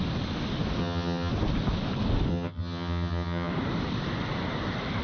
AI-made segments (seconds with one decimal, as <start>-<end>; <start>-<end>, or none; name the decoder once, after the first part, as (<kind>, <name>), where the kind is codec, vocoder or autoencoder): 0.8-1.3 (vocoder, HiFi-GAN); 2.3-3.5